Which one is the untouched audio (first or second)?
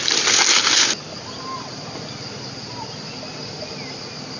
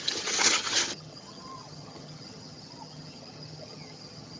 first